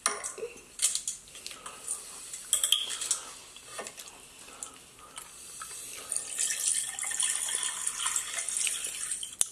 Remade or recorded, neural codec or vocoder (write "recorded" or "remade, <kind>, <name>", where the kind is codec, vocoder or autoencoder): recorded